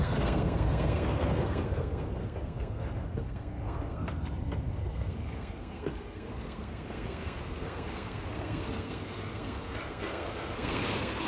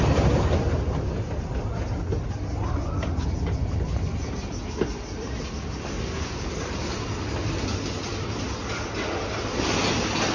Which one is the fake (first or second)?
first